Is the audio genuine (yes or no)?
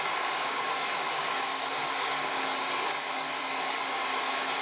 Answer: no